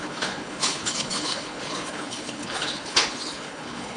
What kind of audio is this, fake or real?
fake